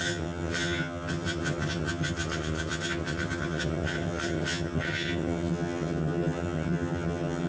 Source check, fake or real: fake